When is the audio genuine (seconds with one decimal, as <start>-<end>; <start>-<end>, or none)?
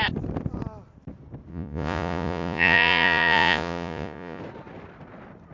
0.0-1.5; 4.4-5.5